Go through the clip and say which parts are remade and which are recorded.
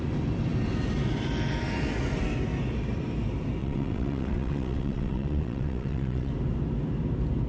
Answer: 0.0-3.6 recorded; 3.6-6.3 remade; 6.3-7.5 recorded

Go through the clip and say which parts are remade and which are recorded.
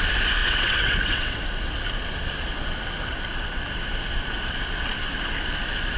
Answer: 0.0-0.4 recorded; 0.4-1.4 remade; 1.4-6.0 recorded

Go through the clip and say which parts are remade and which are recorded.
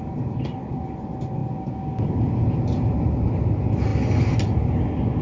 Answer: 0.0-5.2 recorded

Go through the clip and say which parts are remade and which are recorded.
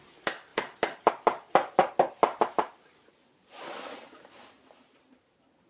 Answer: 0.0-5.7 recorded